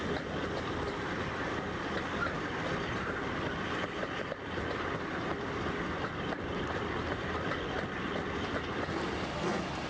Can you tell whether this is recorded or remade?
recorded